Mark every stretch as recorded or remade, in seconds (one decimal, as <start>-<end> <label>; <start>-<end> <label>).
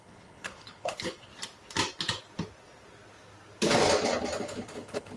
0.0-1.3 remade; 1.3-4.4 recorded; 4.4-5.2 remade